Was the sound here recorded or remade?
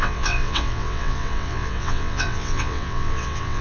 remade